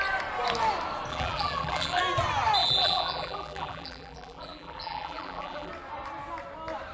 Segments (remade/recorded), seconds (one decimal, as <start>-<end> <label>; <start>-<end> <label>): 0.0-1.1 recorded; 1.1-2.0 remade; 2.0-2.6 recorded; 2.6-5.7 remade; 5.7-6.9 recorded